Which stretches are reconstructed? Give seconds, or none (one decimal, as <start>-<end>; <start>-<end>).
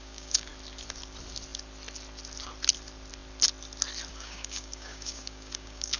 0.0-0.5; 4.1-6.0